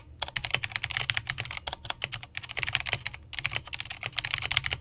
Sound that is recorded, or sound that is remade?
recorded